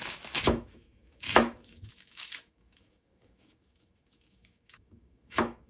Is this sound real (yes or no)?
no